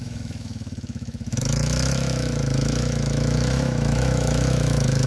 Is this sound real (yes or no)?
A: no